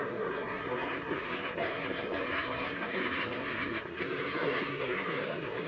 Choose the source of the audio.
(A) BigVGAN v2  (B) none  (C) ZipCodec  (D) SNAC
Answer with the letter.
D